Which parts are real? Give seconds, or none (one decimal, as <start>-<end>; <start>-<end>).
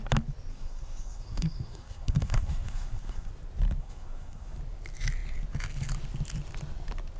0.0-0.5; 3.3-3.8; 4.6-7.2